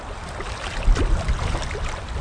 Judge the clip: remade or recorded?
recorded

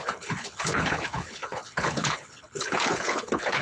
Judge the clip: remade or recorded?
remade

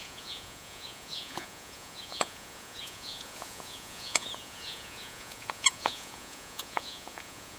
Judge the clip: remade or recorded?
remade